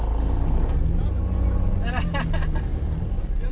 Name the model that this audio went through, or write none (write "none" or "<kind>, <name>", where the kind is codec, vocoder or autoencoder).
none